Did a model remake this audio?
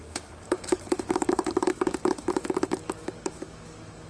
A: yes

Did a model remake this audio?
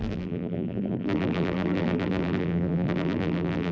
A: yes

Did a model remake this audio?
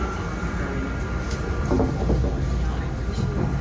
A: no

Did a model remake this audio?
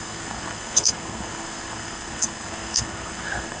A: yes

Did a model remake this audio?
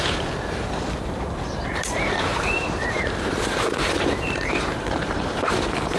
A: yes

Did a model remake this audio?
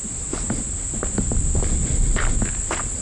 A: no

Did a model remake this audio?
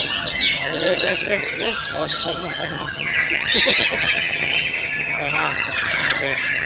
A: yes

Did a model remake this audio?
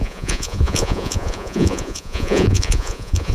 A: yes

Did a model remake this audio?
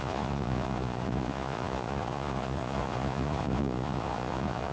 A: yes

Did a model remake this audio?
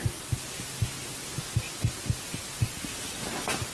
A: no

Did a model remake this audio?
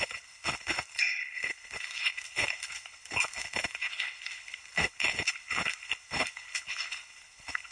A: yes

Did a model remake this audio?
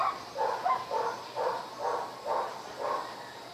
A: no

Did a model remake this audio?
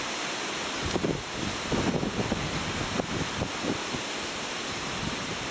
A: no